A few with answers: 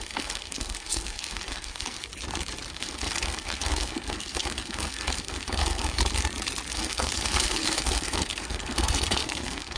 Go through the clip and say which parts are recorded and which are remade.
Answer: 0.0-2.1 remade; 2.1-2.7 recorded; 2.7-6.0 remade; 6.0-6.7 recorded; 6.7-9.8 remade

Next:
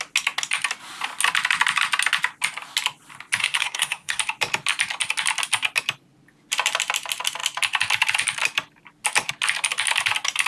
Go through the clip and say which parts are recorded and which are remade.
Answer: 0.0-3.4 recorded; 3.4-4.2 remade; 4.2-10.5 recorded

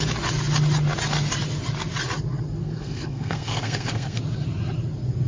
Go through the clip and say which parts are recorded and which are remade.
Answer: 0.0-2.6 recorded; 2.6-4.2 remade; 4.2-5.3 recorded

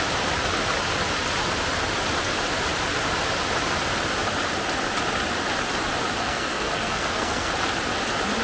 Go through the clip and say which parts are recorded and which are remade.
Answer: 0.0-6.2 recorded; 6.2-7.5 remade; 7.5-8.4 recorded

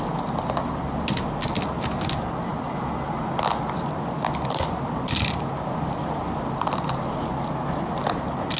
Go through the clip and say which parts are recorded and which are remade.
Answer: 0.0-8.6 recorded